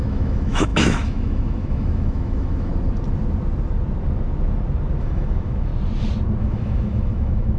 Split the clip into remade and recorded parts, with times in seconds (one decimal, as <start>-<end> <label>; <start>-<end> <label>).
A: 0.0-2.7 remade; 2.7-5.0 recorded; 5.0-5.7 remade; 5.7-6.4 recorded; 6.4-7.6 remade